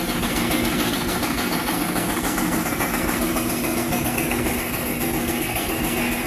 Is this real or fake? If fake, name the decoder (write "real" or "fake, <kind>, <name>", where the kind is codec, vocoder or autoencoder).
fake, codec, SNAC